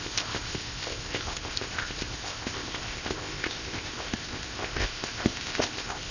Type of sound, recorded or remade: remade